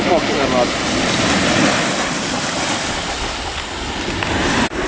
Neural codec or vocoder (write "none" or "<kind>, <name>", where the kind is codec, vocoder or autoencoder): none